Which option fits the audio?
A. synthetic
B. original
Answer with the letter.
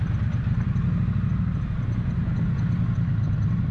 B